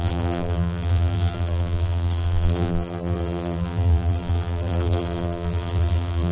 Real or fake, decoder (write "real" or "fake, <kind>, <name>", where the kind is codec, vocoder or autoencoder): fake, vocoder, BigVGAN v2